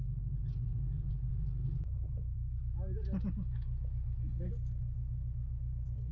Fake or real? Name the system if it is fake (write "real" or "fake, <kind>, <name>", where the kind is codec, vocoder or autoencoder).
real